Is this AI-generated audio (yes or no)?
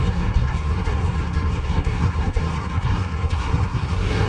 yes